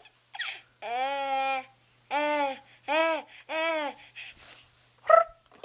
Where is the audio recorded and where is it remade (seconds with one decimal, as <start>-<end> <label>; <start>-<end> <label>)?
0.0-5.6 recorded